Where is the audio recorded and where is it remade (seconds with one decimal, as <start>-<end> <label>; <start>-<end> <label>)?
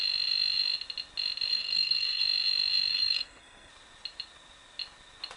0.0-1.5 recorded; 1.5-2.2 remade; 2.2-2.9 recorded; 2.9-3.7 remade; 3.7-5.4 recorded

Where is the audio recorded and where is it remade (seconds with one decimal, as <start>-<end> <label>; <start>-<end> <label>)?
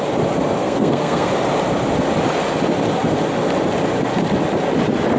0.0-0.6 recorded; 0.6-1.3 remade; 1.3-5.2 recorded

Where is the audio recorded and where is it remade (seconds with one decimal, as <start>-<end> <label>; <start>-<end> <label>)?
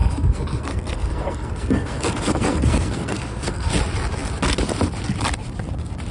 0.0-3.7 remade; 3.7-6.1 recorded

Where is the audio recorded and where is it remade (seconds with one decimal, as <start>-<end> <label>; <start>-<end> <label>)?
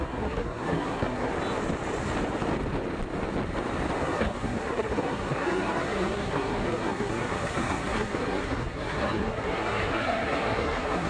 0.0-1.3 remade; 1.3-4.0 recorded; 4.0-11.1 remade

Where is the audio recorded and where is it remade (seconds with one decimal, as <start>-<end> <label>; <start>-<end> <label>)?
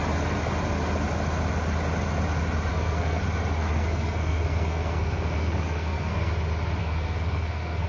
0.0-2.7 recorded; 2.7-3.2 remade; 3.2-3.6 recorded; 3.6-6.3 remade; 6.3-6.8 recorded; 6.8-7.9 remade